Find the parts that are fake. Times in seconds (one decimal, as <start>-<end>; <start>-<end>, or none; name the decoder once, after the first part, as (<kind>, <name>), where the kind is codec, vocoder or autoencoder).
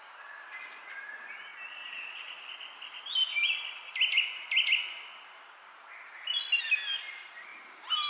none